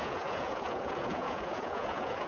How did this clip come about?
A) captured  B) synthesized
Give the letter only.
B